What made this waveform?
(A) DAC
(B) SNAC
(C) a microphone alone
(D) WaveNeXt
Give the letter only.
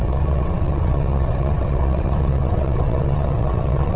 D